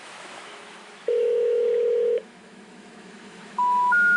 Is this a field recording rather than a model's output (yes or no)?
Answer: no